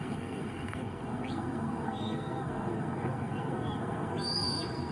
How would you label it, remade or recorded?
remade